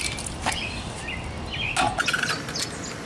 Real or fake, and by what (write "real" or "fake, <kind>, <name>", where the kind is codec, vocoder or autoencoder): real